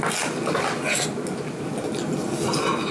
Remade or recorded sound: recorded